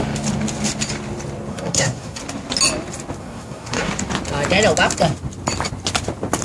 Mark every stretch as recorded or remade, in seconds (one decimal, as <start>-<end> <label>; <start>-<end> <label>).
0.0-1.5 recorded; 1.5-2.2 remade; 2.2-3.2 recorded; 3.2-3.9 remade; 3.9-6.4 recorded